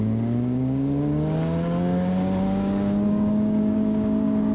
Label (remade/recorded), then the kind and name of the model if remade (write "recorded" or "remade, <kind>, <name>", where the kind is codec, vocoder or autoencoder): remade, codec, DAC